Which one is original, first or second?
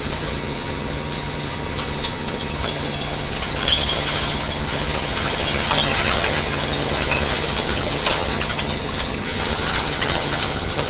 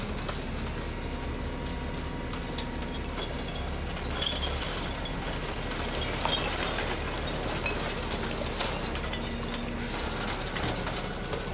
second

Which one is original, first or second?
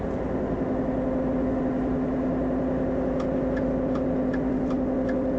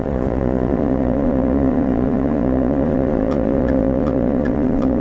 first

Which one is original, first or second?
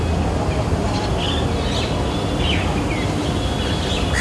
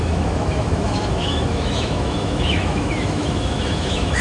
first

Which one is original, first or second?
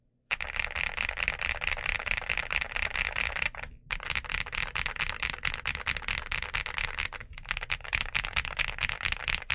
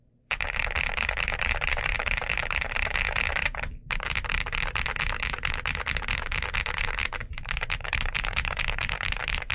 first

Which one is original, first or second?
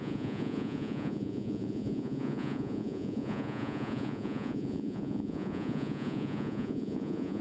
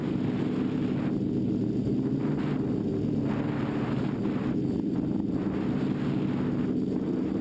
second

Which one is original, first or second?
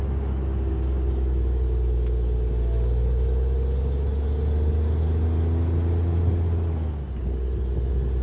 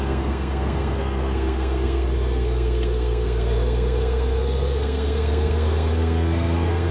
first